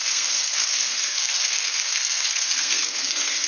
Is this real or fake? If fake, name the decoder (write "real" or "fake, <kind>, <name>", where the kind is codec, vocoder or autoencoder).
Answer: fake, codec, SNAC